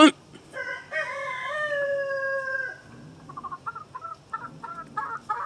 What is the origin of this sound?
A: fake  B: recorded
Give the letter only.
B